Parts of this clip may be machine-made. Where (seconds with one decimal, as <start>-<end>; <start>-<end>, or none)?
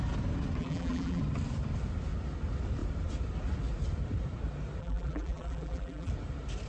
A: 0.6-1.2; 4.8-6.1